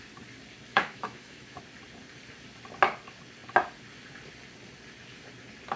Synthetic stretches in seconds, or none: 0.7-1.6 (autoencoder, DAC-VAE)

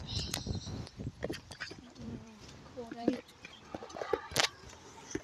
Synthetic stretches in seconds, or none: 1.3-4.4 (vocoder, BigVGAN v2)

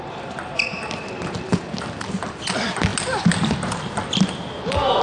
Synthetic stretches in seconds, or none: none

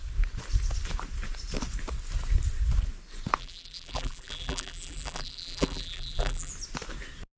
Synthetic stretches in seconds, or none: 3.4-6.5 (vocoder, BigVGAN v2)

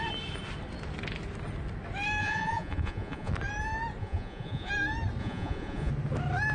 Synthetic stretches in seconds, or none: 2.2-3.3 (vocoder, Vocos); 4.0-4.7; 5.2-5.9

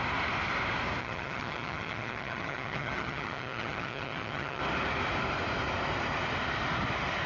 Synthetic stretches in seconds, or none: 1.0-4.6 (vocoder, HiFi-GAN)

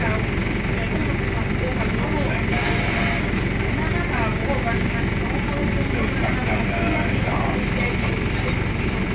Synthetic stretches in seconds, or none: 5.6-6.2 (vocoder, BigVGAN v2)